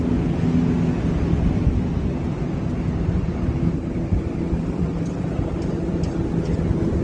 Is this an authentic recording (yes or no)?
yes